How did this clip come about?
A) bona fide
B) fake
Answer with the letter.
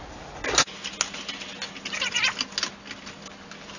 A